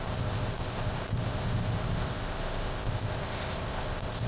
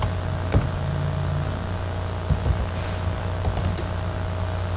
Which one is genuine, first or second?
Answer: second